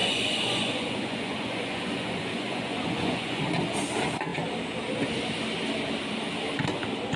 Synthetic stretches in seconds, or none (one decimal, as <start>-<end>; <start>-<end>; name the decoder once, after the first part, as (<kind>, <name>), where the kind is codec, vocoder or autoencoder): 0.0-3.4 (vocoder, Vocos)

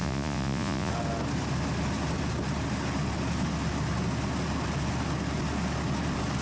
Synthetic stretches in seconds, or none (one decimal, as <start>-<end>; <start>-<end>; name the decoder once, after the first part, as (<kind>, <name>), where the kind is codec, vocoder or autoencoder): 0.0-0.9 (vocoder, Vocos)

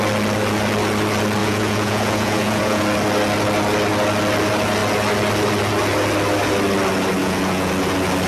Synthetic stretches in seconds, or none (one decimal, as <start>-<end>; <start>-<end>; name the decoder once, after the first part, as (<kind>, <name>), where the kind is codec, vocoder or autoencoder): 1.4-2.8 (vocoder, Vocos); 7.2-7.7

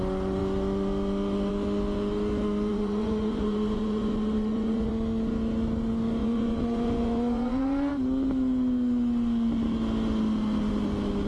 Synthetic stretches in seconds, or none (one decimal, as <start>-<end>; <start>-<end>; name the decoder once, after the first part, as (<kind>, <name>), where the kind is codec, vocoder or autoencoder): 2.7-4.9 (vocoder, Vocos); 6.2-7.9